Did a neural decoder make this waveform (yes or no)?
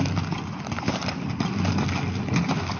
no